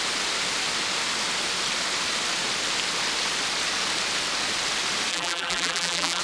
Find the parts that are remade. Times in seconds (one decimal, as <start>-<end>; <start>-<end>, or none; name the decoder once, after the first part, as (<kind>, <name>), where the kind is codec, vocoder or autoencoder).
5.1-6.2 (vocoder, BigVGAN v2)